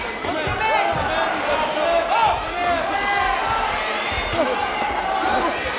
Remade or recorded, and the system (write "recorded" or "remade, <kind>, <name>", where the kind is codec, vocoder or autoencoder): recorded